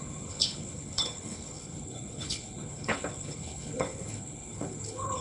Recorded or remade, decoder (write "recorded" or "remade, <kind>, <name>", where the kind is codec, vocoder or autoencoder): remade, codec, HILCodec